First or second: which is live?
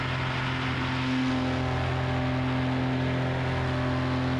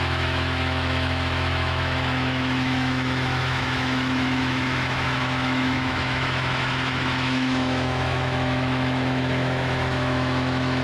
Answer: first